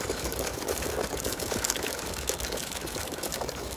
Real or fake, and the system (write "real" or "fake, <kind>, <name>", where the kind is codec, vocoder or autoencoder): fake, codec, DAC